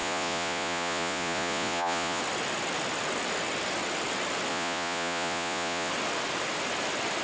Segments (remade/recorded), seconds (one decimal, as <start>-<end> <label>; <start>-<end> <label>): 0.0-2.2 remade; 2.2-4.5 recorded; 4.5-5.9 remade; 5.9-7.2 recorded